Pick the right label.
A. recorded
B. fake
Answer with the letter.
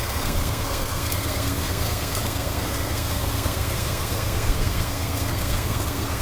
B